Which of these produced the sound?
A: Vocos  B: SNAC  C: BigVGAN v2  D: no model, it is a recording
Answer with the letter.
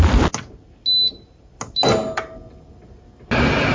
D